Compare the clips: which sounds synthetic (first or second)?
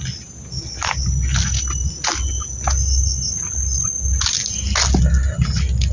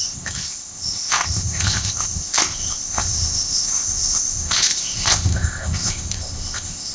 second